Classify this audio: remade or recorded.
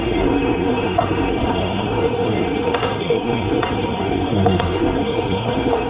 remade